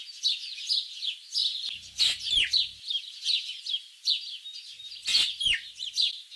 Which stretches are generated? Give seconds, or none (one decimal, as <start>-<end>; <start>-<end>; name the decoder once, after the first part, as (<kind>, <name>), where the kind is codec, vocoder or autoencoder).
none